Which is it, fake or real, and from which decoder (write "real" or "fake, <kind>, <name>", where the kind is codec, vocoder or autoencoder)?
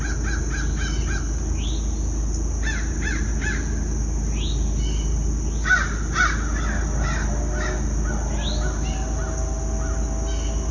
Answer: real